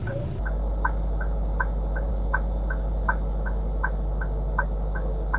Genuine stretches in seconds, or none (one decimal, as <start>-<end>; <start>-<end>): 0.0-5.4